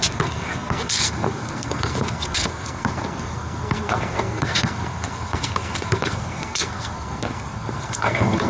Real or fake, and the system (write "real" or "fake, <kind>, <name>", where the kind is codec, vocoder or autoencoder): fake, codec, SNAC